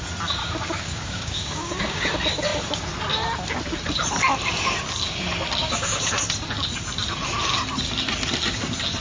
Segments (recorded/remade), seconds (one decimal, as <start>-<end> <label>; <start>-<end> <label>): 0.0-0.4 recorded; 0.4-2.1 remade; 2.1-5.6 recorded; 5.6-6.1 remade; 6.1-9.0 recorded